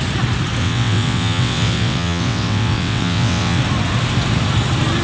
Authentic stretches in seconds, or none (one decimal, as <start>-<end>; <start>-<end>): 0.0-0.6; 3.6-5.0